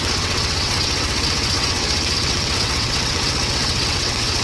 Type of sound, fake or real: fake